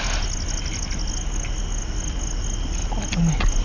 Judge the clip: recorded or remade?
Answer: recorded